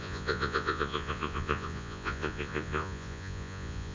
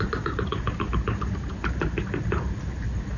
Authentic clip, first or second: second